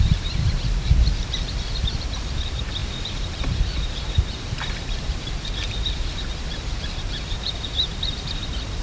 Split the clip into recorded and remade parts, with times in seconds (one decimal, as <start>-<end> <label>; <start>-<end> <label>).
0.0-8.8 remade